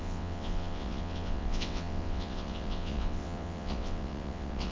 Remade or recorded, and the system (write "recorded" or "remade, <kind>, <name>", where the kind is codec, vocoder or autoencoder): remade, vocoder, WaveNeXt